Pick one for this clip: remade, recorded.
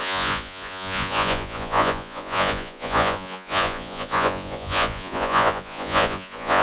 remade